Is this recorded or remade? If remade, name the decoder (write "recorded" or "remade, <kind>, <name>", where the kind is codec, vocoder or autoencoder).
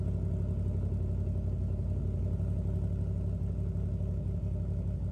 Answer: recorded